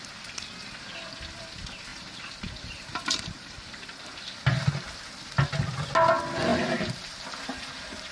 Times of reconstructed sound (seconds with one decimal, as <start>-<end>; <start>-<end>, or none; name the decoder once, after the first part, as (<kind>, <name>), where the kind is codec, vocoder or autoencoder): 1.9-3.7 (vocoder, BigVGAN v2); 6.5-8.1